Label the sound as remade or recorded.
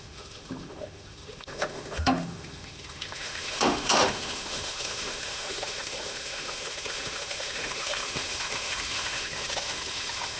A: remade